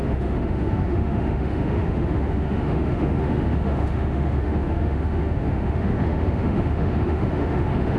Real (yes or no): no